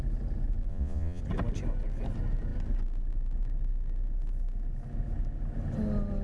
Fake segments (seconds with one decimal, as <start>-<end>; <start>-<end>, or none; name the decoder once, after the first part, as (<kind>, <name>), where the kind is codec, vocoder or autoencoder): 0.7-1.2 (vocoder, Vocos)